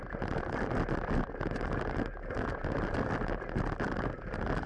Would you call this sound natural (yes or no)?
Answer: yes